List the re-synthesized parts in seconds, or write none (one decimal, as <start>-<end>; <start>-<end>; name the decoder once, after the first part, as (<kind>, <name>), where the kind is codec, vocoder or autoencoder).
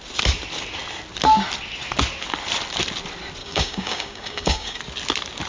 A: 3.4-4.8 (codec, DAC)